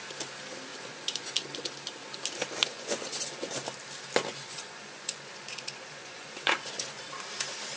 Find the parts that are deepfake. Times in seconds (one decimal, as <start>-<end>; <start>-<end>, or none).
0.7-1.3; 2.6-3.5; 4.3-7.0